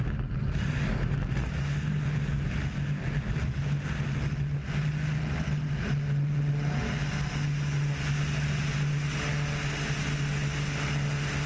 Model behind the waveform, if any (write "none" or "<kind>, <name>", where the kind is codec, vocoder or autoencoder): none